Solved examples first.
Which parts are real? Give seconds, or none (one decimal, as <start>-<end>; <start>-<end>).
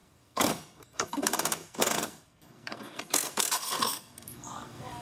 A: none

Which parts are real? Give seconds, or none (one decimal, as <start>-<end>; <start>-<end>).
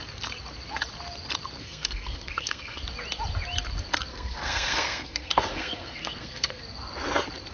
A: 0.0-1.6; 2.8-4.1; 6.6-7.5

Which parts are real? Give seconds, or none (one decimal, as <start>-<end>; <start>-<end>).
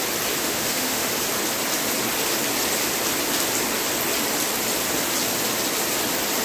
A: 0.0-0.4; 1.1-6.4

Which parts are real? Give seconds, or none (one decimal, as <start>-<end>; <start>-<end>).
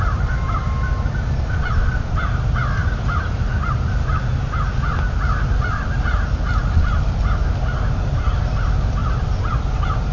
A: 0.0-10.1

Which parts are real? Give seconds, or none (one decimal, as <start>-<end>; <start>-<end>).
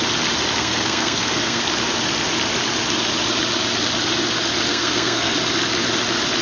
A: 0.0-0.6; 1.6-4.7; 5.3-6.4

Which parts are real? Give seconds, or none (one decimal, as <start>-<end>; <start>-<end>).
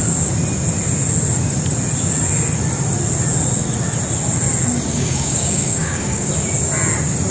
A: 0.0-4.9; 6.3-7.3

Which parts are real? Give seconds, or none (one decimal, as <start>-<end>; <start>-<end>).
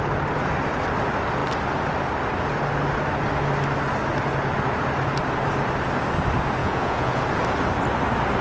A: 0.0-6.6; 7.2-8.4